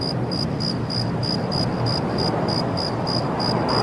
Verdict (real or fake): real